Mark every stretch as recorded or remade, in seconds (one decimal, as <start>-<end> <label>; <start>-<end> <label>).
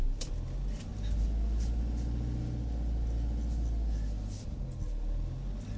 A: 0.0-5.8 recorded